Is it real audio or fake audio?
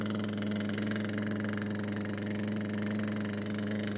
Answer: real